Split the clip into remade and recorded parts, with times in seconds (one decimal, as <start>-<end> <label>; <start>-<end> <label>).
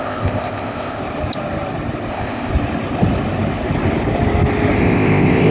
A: 0.0-1.0 remade; 1.0-2.1 recorded; 2.1-2.5 remade; 2.5-4.8 recorded; 4.8-5.5 remade